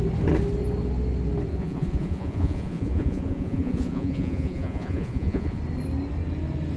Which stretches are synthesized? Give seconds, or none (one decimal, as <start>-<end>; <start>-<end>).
1.5-5.6